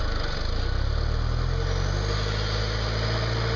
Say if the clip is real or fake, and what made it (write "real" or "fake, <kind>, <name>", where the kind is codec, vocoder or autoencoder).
real